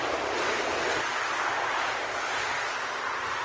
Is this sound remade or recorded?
recorded